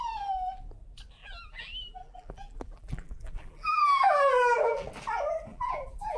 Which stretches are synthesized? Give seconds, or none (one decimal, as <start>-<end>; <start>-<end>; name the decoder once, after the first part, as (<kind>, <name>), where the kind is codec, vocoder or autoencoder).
1.2-4.9 (vocoder, BigVGAN v2); 5.5-6.2